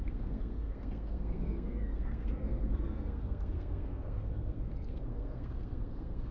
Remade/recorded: remade